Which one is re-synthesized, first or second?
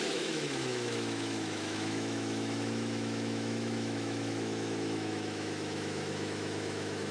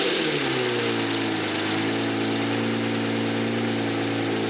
first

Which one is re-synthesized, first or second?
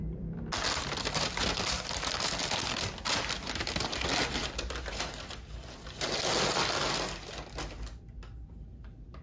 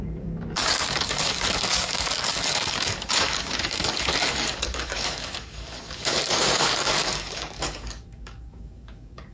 second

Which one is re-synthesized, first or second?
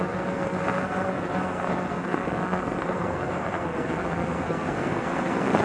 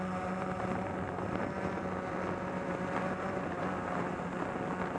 first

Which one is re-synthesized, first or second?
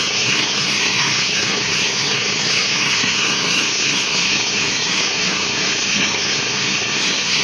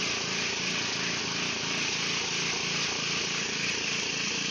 first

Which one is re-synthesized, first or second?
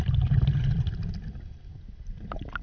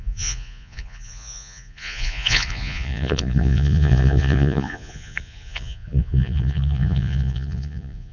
second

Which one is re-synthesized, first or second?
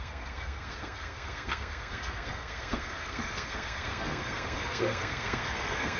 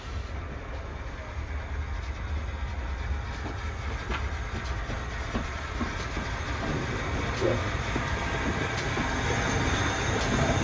first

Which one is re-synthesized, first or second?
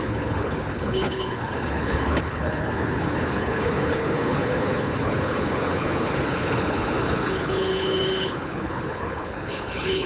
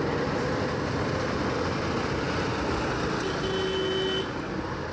first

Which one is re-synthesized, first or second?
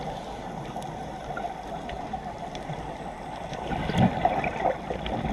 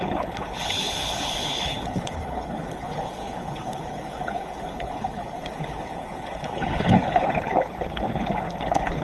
second